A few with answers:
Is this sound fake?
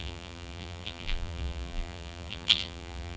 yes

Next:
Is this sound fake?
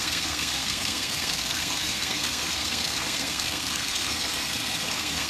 yes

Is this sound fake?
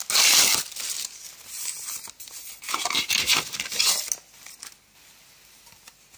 no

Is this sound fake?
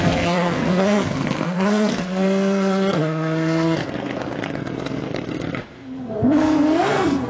yes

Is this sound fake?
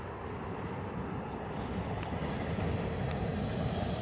no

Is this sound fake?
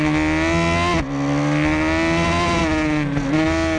no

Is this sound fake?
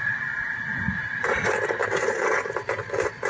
yes